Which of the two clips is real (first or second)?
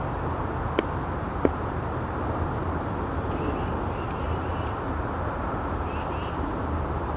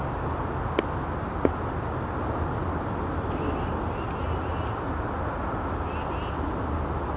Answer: second